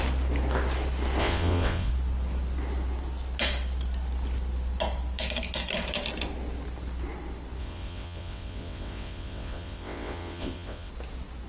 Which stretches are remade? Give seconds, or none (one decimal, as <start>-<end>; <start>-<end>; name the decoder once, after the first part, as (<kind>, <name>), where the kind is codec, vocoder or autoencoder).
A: 1.2-1.9 (vocoder, WaveNeXt); 7.6-10.9